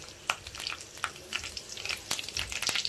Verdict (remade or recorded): recorded